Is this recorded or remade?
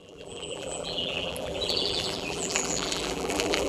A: remade